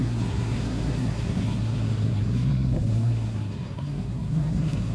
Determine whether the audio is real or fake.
fake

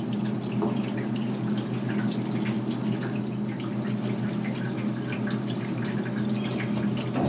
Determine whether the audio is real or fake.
real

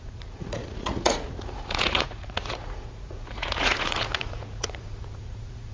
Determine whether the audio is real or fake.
fake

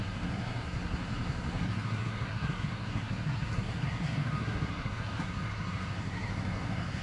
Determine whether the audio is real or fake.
fake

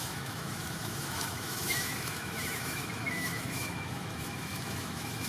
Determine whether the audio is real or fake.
fake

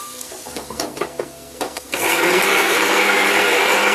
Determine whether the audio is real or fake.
fake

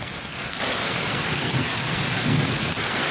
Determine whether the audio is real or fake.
fake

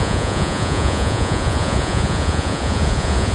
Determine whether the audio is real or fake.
fake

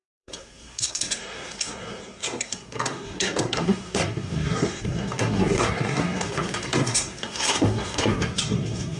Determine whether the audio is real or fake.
fake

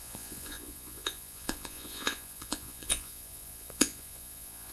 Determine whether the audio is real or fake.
fake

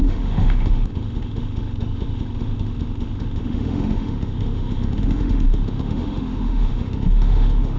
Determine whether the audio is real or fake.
fake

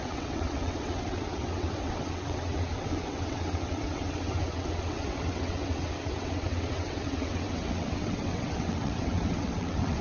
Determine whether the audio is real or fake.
fake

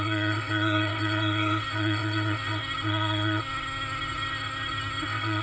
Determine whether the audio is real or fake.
fake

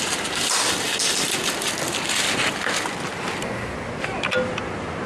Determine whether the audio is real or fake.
real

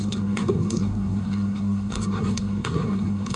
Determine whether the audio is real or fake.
fake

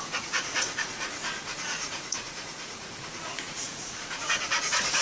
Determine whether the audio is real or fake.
fake